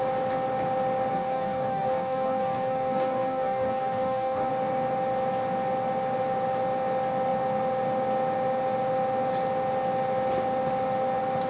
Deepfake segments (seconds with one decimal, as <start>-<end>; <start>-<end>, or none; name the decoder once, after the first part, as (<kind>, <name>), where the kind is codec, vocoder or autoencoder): 1.1-4.5 (codec, DAC)